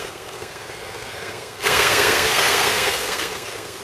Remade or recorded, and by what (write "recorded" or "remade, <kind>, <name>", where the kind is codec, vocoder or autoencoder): remade, codec, SNAC